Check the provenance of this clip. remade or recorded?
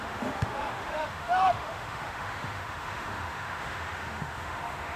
remade